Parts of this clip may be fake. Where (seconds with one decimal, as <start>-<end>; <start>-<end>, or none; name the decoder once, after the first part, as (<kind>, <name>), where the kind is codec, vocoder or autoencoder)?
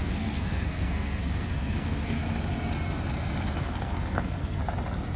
0.0-2.2 (codec, SNAC); 3.6-4.6